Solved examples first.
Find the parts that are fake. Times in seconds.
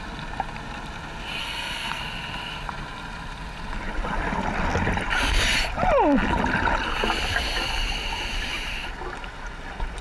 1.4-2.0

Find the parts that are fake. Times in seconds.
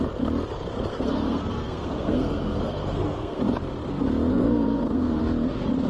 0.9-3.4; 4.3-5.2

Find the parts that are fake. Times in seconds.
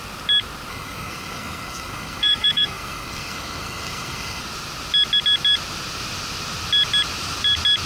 0.7-4.4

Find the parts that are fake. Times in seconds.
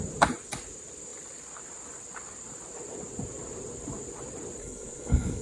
4.6-5.4